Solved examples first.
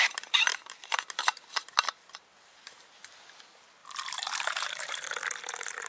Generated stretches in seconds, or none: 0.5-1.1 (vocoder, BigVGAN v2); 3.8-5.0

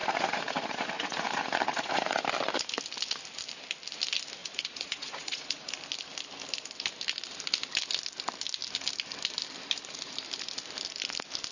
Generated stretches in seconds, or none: 0.0-2.2 (vocoder, Vocos); 4.4-5.7